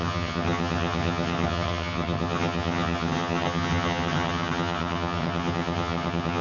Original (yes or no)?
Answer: no